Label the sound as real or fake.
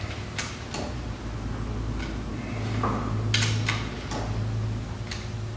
real